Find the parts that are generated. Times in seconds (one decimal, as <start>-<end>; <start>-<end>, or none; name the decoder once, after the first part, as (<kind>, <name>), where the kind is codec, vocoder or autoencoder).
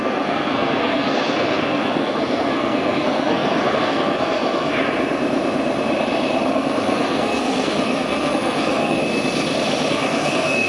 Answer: 0.0-4.7 (codec, SNAC); 6.5-9.0; 9.9-10.7